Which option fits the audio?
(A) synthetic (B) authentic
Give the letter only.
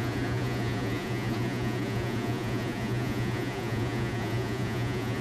A